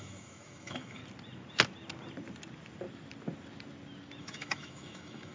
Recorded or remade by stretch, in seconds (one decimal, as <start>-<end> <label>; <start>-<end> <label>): 0.0-1.0 remade; 1.0-4.2 recorded; 4.2-5.3 remade